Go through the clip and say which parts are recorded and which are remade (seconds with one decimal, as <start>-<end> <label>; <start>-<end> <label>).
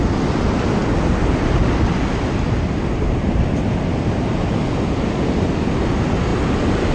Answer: 0.0-6.3 recorded; 6.3-6.9 remade